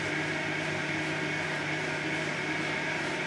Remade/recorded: recorded